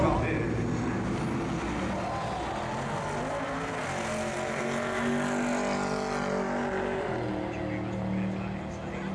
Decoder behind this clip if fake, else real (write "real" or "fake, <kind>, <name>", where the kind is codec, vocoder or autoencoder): real